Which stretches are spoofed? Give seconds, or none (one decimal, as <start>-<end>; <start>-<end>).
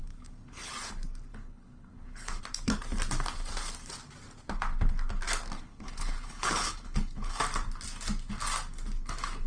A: 0.0-0.7; 1.3-2.4; 5.6-7.4